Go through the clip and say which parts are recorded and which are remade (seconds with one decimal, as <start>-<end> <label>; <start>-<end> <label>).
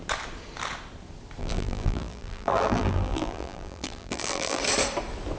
0.0-1.4 recorded; 1.4-4.6 remade; 4.6-5.4 recorded